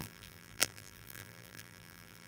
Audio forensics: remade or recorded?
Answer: remade